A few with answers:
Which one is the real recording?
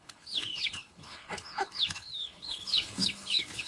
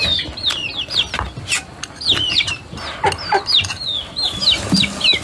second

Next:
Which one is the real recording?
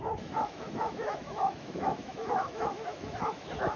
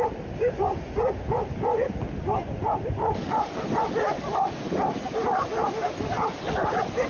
second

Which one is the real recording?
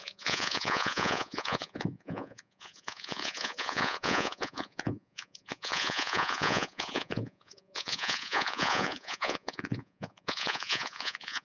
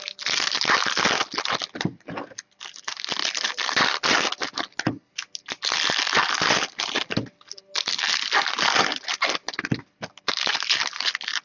second